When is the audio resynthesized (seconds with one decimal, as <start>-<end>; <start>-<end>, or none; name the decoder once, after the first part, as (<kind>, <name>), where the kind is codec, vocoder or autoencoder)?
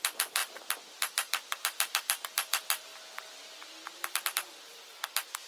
0.0-2.9 (vocoder, BigVGAN v2); 3.9-4.9